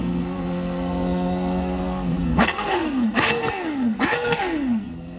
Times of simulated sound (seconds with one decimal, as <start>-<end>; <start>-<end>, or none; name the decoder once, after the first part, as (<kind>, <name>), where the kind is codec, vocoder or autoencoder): 0.0-5.2 (codec, SNAC)